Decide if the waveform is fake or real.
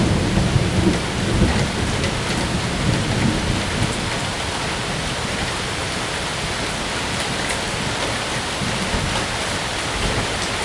real